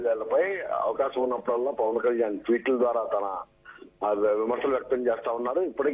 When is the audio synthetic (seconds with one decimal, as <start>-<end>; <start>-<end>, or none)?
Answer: 0.0-2.0